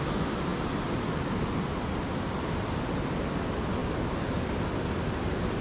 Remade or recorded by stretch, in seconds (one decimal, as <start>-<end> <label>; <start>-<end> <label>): 0.0-5.6 recorded